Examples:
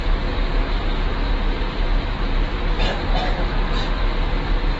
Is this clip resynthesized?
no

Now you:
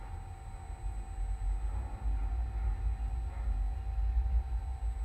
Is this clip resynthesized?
no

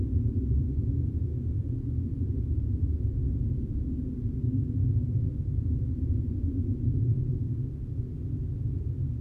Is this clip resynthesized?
no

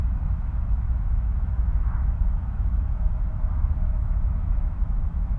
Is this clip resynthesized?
yes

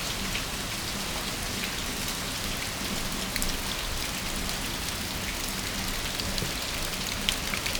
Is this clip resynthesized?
no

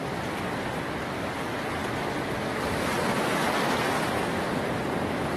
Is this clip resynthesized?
no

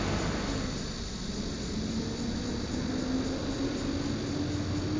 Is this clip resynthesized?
no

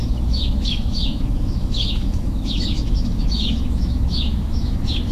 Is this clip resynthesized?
yes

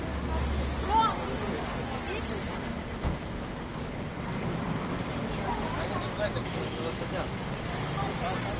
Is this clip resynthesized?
no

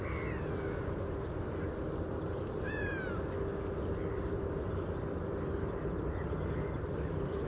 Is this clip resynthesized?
no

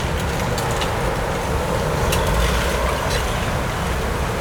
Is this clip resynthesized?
no